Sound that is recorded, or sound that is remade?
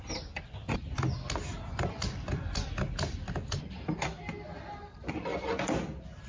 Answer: recorded